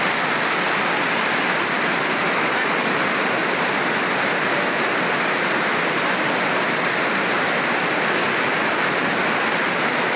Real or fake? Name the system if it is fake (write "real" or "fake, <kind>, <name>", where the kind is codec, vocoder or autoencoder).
real